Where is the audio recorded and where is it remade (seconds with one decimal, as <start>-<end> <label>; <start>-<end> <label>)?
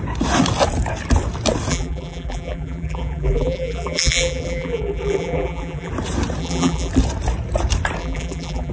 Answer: 0.0-1.7 recorded; 1.7-5.9 remade; 5.9-6.4 recorded; 6.4-6.9 remade; 6.9-8.0 recorded; 8.0-8.7 remade